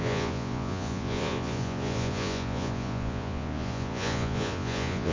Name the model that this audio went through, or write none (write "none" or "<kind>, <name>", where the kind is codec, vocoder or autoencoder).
vocoder, Vocos